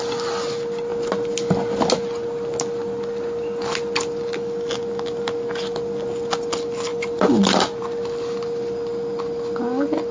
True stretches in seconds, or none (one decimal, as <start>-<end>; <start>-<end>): 0.0-10.1